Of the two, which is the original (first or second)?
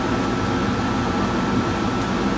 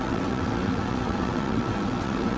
first